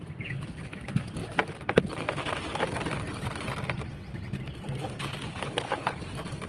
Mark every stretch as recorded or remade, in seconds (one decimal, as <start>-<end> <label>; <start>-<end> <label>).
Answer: 0.0-5.3 recorded; 5.3-6.0 remade; 6.0-6.5 recorded